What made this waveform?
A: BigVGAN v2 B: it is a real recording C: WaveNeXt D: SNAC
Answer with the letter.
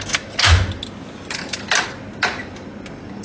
B